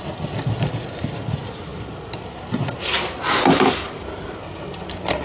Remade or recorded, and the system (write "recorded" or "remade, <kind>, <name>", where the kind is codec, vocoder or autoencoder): recorded